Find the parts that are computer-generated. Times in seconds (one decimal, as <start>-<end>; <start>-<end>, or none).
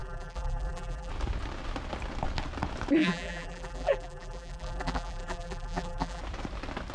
0.0-1.1; 3.0-6.2